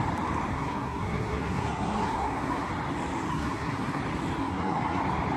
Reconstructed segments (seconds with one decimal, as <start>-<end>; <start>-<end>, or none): 0.5-2.7; 3.3-4.0; 4.4-5.0